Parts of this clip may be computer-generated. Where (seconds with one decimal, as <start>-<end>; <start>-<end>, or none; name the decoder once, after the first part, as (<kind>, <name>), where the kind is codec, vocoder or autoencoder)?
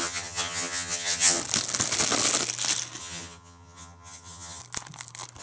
0.0-1.4 (vocoder, HiFi-GAN); 3.0-4.6